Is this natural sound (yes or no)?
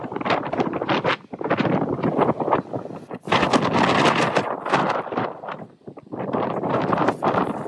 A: no